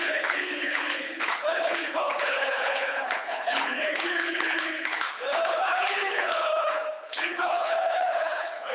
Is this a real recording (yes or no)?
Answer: no